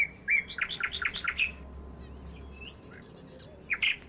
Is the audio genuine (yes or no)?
yes